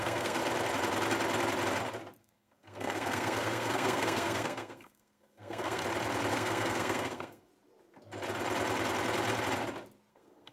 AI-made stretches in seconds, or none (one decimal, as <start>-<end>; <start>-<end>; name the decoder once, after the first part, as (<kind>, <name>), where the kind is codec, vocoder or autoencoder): 0.0-0.4 (codec, SNAC); 2.2-5.8; 6.3-7.5; 10.1-10.5